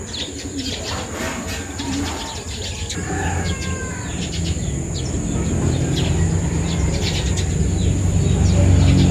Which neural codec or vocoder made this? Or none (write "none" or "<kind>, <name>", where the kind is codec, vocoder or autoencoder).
none